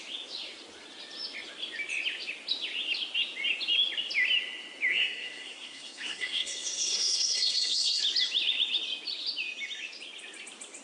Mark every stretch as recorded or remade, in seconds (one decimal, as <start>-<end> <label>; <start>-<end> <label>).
0.0-4.9 recorded; 4.9-8.0 remade; 8.0-10.8 recorded